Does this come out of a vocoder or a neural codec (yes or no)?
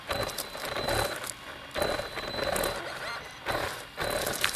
no